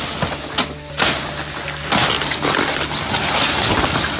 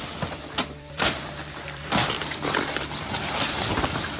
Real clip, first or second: first